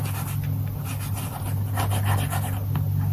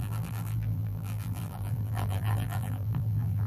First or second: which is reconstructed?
second